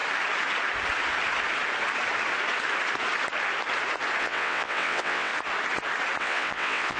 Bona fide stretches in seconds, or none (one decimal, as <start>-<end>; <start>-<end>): 0.0-4.2; 5.3-6.2